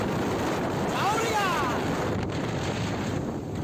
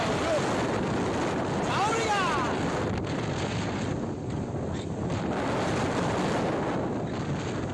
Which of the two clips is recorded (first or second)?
second